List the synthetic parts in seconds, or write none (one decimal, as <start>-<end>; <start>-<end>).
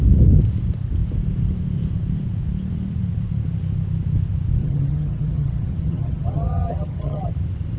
4.6-7.3